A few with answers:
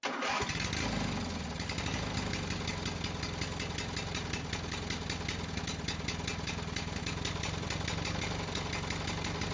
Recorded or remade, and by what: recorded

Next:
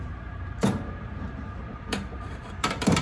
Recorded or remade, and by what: remade, vocoder, BigVGAN v2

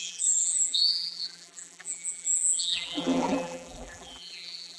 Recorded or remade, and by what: remade, vocoder, BigVGAN v2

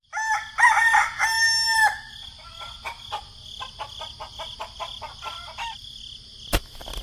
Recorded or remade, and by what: recorded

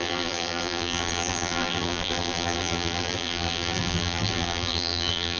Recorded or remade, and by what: remade, vocoder, BigVGAN v2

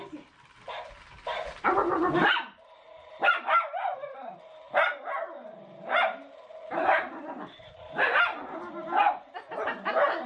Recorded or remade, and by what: remade, vocoder, BigVGAN v2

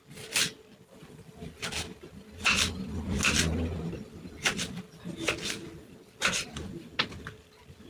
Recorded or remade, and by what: recorded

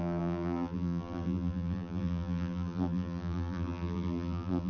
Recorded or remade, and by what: remade, vocoder, BigVGAN v2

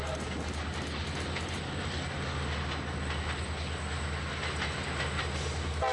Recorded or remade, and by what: recorded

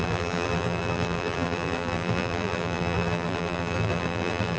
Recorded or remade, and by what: remade, vocoder, BigVGAN v2